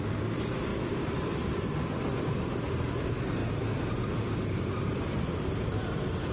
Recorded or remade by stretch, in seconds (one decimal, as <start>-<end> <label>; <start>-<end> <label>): 0.0-3.4 remade; 3.4-5.3 recorded; 5.3-6.3 remade